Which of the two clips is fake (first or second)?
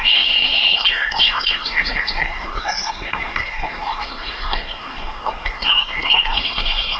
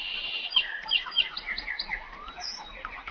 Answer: first